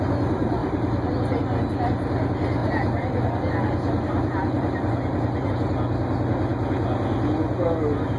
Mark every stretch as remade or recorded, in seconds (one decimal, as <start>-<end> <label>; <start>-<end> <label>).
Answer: 0.0-0.6 recorded; 0.6-1.1 remade; 1.1-2.6 recorded; 2.6-5.5 remade; 5.5-8.2 recorded